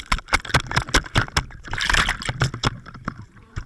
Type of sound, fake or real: real